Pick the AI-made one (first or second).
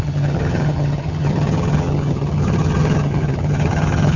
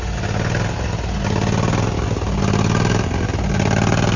first